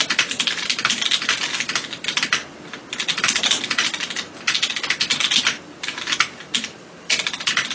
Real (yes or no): yes